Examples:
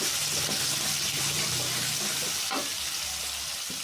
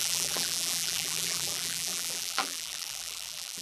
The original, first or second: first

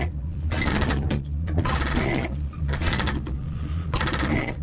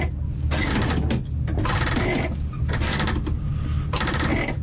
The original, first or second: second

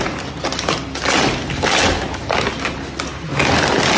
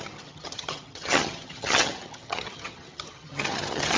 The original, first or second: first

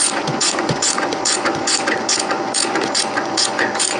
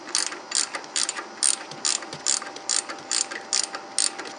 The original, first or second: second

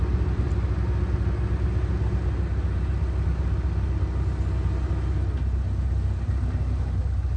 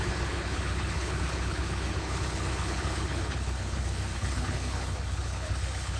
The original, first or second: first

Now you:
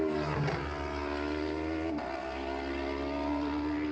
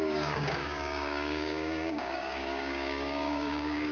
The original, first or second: first